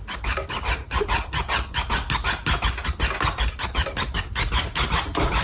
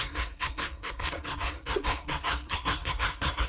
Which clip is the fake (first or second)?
second